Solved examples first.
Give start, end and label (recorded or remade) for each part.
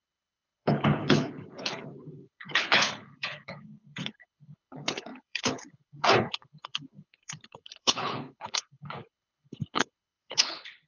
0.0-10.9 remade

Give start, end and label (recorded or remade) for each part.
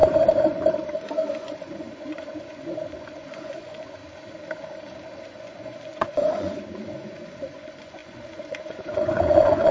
0.0-1.3 recorded; 1.3-4.0 remade; 4.0-5.2 recorded; 5.2-9.7 remade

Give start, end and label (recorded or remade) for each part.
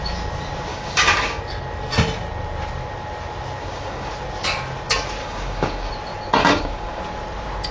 0.0-0.7 recorded; 0.7-1.4 remade; 1.4-3.6 recorded; 3.6-4.1 remade; 4.1-5.2 recorded; 5.2-5.9 remade; 5.9-6.4 recorded; 6.4-7.0 remade; 7.0-7.7 recorded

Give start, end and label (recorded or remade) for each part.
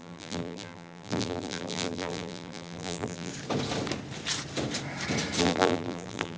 0.0-3.3 remade; 3.3-5.4 recorded; 5.4-6.4 remade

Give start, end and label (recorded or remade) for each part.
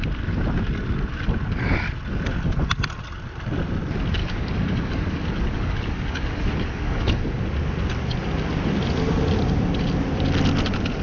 0.0-4.2 recorded; 4.2-7.2 remade; 7.2-11.0 recorded